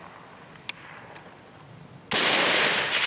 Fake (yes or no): no